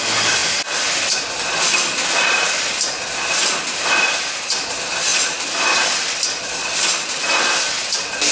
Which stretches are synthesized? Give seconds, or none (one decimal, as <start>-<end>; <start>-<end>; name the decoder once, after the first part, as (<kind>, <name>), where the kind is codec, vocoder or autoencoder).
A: none